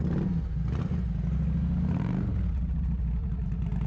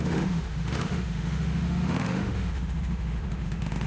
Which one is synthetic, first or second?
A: second